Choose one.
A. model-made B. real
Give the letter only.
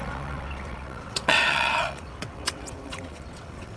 A